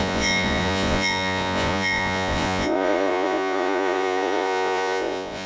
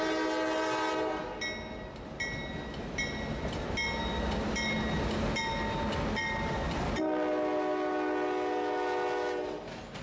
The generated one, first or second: first